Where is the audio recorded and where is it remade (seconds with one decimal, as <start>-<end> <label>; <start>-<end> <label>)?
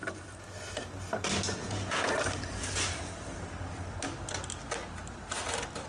0.0-1.6 recorded; 1.6-2.1 remade; 2.1-5.9 recorded